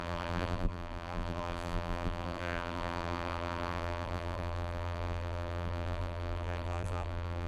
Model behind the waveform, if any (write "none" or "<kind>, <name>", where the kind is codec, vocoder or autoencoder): vocoder, BigVGAN v2